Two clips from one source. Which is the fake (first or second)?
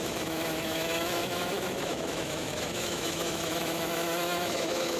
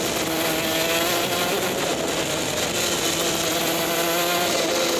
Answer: first